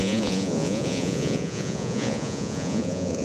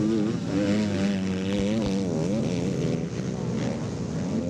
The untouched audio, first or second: second